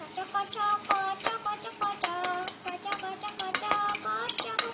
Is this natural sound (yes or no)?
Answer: yes